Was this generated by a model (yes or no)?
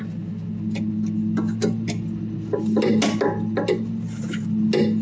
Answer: no